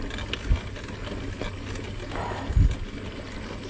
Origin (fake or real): real